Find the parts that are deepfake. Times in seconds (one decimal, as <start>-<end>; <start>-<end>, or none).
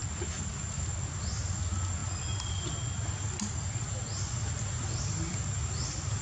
none